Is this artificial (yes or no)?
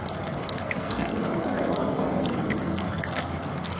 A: yes